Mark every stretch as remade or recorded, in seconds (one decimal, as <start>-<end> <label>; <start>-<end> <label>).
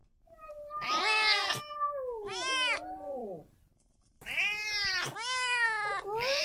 0.0-6.4 recorded